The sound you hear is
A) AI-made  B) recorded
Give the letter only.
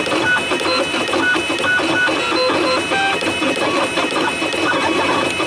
B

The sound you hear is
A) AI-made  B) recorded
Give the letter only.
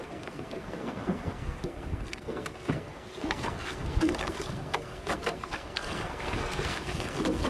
A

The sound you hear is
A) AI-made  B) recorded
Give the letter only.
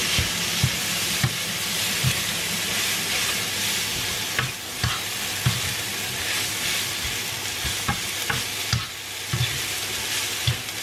B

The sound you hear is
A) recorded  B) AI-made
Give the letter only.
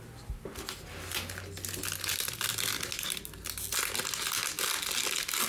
A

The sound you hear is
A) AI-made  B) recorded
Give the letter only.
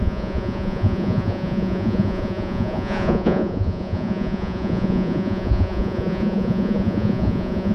A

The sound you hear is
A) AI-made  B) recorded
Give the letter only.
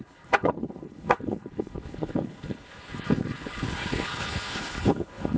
A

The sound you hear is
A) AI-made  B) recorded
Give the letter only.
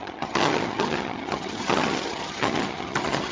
A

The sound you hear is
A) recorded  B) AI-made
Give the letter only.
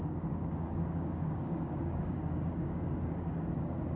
B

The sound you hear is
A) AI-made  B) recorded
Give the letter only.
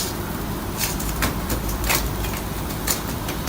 A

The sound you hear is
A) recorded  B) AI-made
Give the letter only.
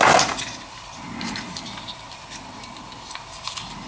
A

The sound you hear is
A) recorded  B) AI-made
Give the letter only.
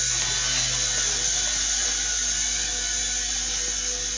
A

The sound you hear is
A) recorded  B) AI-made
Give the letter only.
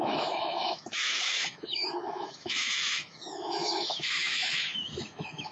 B